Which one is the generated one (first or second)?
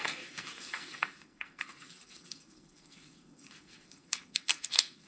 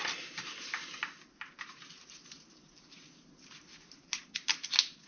first